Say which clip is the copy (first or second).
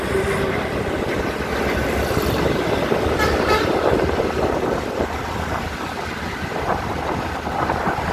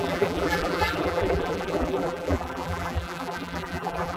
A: second